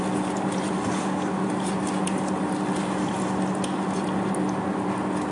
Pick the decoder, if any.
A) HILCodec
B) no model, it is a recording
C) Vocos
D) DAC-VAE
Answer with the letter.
B